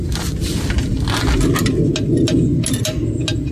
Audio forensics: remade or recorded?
recorded